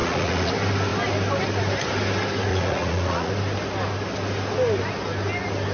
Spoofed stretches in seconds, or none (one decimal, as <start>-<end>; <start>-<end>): 0.0-0.5; 2.5-3.3